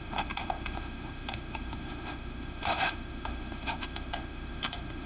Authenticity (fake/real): fake